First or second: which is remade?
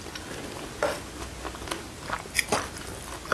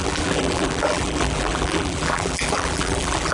second